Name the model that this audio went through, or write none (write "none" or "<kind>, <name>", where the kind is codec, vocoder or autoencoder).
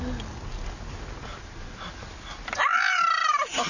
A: none